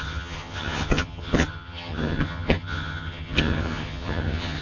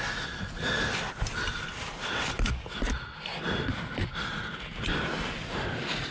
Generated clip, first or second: first